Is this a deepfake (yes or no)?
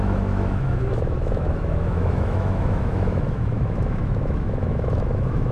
yes